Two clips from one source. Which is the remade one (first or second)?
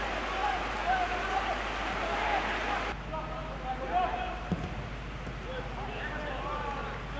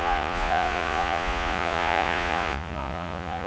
second